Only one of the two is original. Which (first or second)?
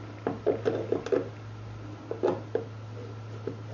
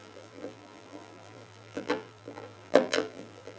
first